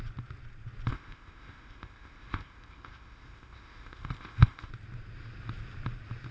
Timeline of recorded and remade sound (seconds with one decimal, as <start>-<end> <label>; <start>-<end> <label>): 0.0-0.9 recorded; 0.9-4.7 remade; 4.7-6.3 recorded